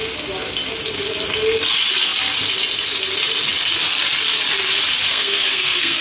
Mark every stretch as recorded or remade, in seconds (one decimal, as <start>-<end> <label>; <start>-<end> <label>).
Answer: 0.0-5.1 recorded; 5.1-6.0 remade